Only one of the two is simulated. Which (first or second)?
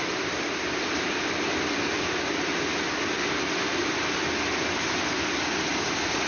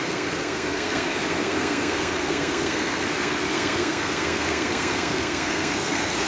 second